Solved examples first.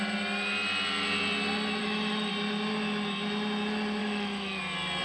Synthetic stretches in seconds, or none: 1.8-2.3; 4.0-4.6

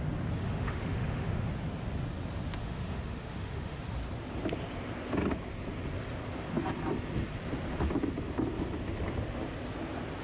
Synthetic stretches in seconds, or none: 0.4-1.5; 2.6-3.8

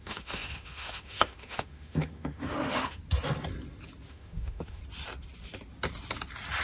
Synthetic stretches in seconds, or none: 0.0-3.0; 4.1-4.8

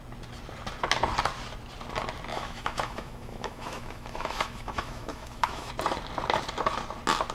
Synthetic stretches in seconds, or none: 2.3-5.7